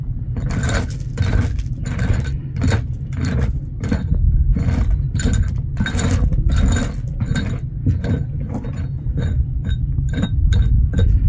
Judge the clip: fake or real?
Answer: real